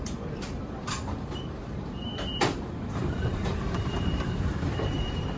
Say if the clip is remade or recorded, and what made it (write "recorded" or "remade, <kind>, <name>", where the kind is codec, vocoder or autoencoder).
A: remade, vocoder, BigVGAN v2